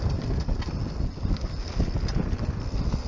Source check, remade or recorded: recorded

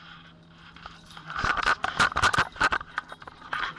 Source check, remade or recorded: recorded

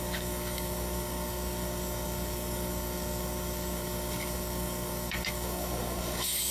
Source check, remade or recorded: remade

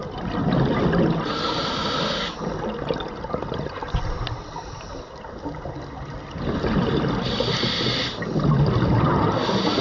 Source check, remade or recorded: recorded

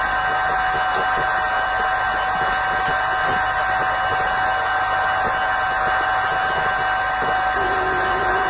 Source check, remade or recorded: recorded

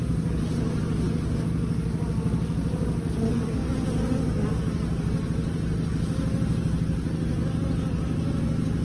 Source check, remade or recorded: recorded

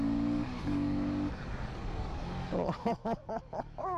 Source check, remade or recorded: remade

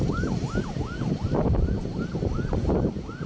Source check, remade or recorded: recorded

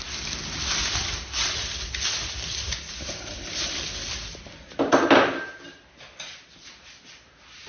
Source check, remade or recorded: recorded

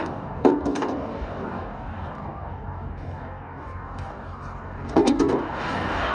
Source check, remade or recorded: remade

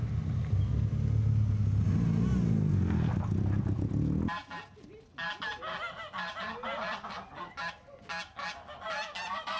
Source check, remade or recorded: recorded